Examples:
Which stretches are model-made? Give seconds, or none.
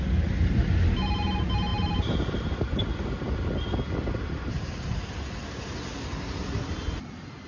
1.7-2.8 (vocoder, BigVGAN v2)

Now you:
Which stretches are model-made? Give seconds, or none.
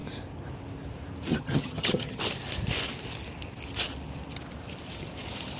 1.3-2.2 (vocoder, HiFi-GAN)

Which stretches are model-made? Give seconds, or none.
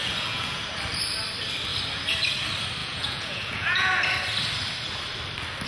0.0-0.6 (vocoder, Vocos); 2.8-3.9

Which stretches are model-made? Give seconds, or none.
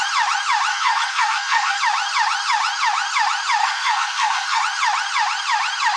0.7-1.8 (codec, SNAC); 3.6-4.6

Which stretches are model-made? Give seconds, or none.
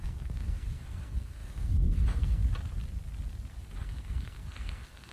0.0-2.4 (codec, SNAC); 3.5-5.1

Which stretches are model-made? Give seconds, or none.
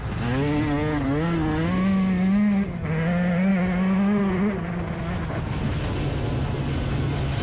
none